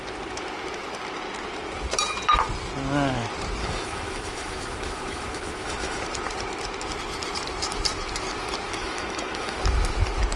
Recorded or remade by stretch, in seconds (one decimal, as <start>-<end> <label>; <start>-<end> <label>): 0.0-3.6 recorded; 3.6-6.0 remade; 6.0-8.8 recorded; 8.8-9.6 remade; 9.6-10.4 recorded